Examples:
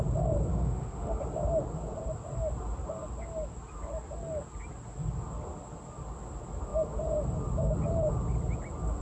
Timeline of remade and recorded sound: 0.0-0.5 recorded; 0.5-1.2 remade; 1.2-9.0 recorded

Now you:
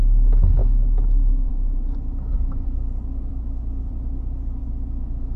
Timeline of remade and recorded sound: 0.0-0.6 recorded; 0.6-1.5 remade; 1.5-3.3 recorded; 3.3-3.9 remade; 3.9-5.4 recorded

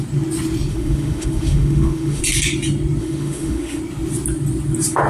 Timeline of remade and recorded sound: 0.0-0.7 recorded; 0.7-2.2 remade; 2.2-3.0 recorded; 3.0-3.8 remade; 3.8-5.1 recorded

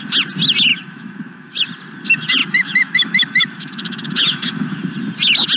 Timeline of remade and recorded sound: 0.0-0.7 recorded; 0.7-1.6 remade; 1.6-2.4 recorded; 2.4-4.8 remade; 4.8-5.6 recorded

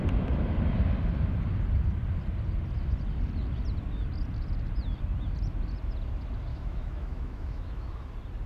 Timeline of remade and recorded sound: 0.0-6.5 recorded; 6.5-8.1 remade; 8.1-8.5 recorded